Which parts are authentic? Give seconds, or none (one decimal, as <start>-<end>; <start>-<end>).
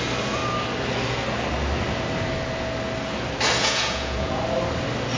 0.0-3.6; 4.4-5.2